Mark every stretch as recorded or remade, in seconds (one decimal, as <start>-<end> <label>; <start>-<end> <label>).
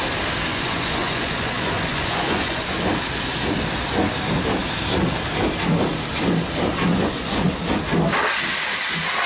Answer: 0.0-0.5 recorded; 0.5-2.7 remade; 2.7-6.9 recorded; 6.9-7.5 remade; 7.5-9.3 recorded